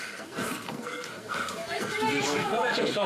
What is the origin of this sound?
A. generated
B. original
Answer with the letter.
A